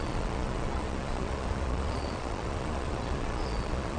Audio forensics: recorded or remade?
remade